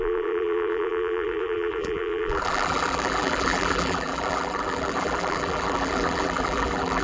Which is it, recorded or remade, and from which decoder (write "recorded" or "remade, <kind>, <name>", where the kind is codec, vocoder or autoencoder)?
remade, vocoder, BigVGAN v2